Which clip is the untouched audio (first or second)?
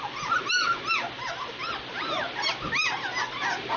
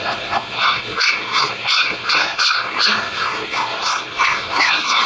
first